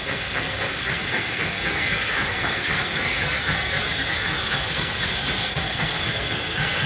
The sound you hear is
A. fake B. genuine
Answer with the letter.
A